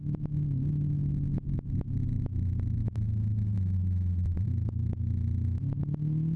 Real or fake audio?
real